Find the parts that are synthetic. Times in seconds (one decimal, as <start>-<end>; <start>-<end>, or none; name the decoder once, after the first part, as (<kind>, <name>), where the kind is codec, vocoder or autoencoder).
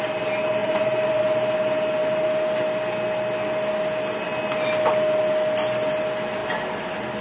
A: 0.6-1.2 (vocoder, BigVGAN v2); 6.4-7.2